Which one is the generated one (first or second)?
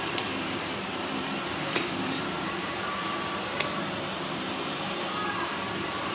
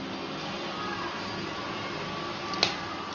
first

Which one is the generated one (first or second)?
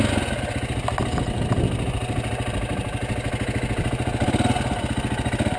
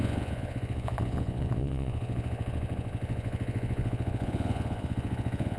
second